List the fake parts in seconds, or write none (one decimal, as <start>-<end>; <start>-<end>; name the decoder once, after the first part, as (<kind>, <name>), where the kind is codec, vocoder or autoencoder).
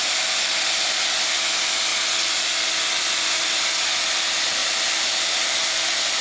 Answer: 4.6-6.2 (vocoder, BigVGAN v2)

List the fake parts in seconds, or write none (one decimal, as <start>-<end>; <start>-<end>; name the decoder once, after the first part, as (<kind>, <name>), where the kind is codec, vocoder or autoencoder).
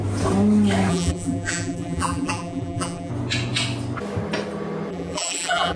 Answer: 0.9-3.1 (vocoder, BigVGAN v2); 4.9-5.8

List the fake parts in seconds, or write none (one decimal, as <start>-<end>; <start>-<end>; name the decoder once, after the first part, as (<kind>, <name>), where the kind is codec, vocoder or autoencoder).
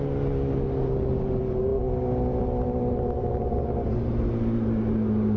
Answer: none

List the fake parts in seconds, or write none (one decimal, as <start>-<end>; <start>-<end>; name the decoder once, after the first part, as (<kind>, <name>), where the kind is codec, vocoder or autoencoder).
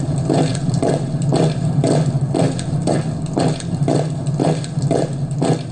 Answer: none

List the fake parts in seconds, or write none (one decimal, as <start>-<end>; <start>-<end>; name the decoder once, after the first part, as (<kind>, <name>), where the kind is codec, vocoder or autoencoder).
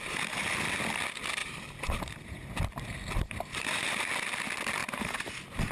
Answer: 1.4-4.1 (vocoder, BigVGAN v2); 4.8-5.3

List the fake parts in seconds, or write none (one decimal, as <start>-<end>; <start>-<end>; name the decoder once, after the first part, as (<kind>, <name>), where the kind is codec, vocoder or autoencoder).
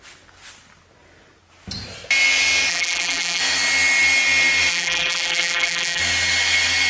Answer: 2.7-3.4 (vocoder, BigVGAN v2); 4.7-6.0